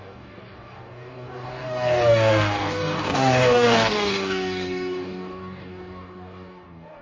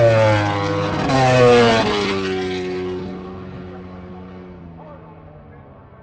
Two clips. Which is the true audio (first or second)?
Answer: second